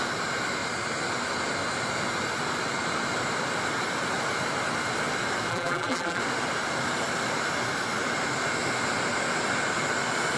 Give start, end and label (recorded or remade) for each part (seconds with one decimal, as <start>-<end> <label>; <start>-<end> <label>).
0.0-5.5 recorded; 5.5-6.2 remade; 6.2-10.4 recorded